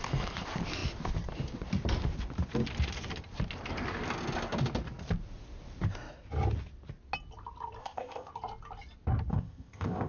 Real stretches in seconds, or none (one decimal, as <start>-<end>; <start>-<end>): 0.0-7.8; 8.3-9.3